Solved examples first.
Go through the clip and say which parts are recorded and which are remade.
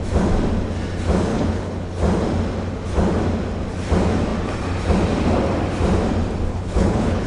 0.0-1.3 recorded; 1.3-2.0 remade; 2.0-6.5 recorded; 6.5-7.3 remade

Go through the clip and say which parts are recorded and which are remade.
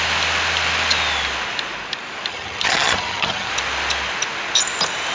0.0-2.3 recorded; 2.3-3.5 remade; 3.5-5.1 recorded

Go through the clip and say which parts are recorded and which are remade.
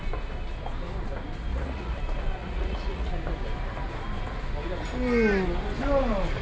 0.0-1.5 recorded; 1.5-2.0 remade; 2.0-2.4 recorded; 2.4-3.1 remade; 3.1-6.4 recorded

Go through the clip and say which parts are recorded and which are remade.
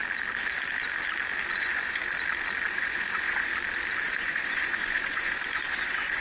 0.0-1.6 recorded; 1.6-2.0 remade; 2.0-2.7 recorded; 2.7-3.5 remade; 3.5-4.0 recorded; 4.0-6.2 remade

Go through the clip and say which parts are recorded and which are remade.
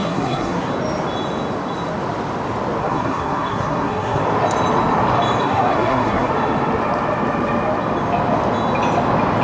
0.0-0.7 remade; 0.7-2.8 recorded; 2.8-4.2 remade; 4.2-5.4 recorded; 5.4-6.3 remade; 6.3-9.4 recorded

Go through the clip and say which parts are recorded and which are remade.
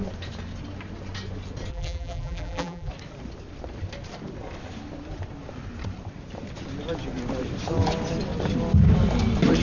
0.0-1.7 recorded; 1.7-2.9 remade; 2.9-9.6 recorded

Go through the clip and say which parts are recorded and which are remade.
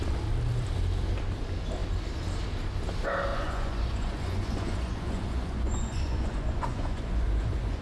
0.0-3.3 recorded; 3.3-7.8 remade